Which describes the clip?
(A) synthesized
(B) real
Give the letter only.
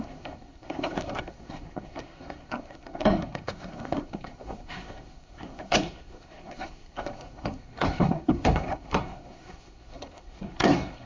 A